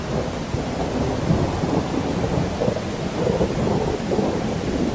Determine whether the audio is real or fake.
real